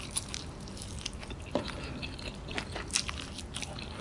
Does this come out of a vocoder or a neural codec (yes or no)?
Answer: no